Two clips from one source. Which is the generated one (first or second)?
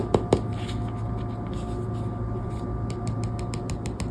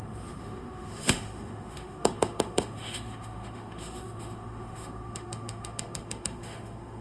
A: second